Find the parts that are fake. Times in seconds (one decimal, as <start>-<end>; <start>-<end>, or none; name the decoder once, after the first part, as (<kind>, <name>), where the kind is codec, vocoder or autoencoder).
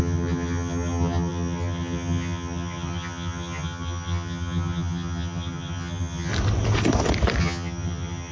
0.0-6.3 (vocoder, HiFi-GAN); 7.4-8.3